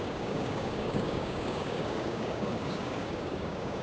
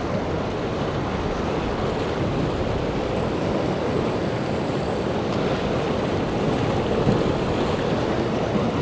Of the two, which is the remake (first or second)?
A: first